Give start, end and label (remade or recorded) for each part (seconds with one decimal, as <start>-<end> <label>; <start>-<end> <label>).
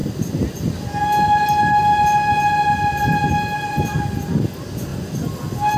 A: 0.0-5.8 recorded